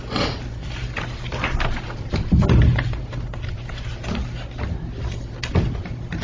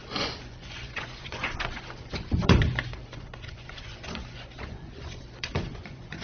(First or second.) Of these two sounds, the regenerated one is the second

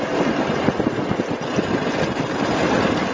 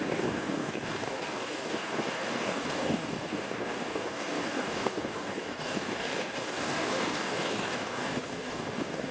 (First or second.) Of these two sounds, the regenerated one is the second